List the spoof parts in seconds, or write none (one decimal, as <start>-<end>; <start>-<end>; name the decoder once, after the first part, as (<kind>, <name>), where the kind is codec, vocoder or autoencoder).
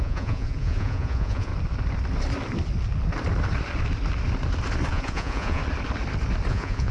0.0-1.5 (vocoder, Vocos); 4.9-5.6; 6.5-6.9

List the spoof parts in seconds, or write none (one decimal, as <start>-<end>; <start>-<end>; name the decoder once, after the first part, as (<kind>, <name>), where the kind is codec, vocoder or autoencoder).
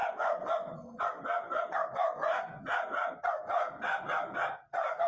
none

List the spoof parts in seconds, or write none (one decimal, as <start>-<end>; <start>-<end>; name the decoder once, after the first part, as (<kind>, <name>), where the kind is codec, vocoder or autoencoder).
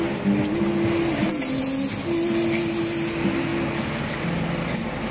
none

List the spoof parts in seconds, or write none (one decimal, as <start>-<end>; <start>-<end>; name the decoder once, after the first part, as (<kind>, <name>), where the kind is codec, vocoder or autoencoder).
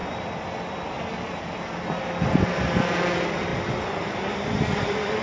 none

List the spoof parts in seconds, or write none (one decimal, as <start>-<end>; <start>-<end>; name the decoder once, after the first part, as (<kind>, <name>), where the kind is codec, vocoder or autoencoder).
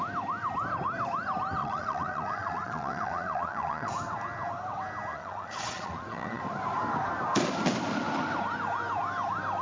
1.6-3.9 (vocoder, Vocos); 5.1-6.4